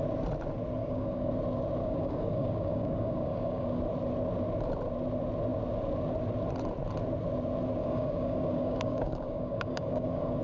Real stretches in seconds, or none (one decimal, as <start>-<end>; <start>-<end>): 0.0-0.8; 1.3-1.8; 3.8-7.8